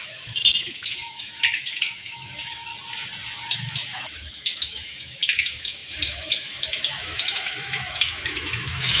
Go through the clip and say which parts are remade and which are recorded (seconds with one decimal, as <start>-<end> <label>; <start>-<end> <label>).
0.0-2.7 remade; 2.7-3.5 recorded; 3.5-9.0 remade